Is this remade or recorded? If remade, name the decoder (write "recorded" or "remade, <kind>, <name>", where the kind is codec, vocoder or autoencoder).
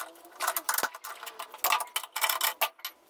recorded